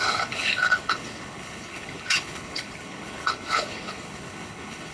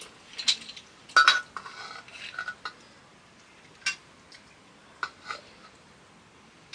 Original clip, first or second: second